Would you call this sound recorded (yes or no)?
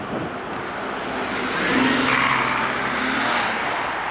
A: yes